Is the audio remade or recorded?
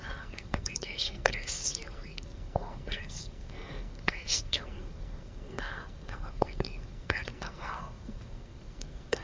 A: remade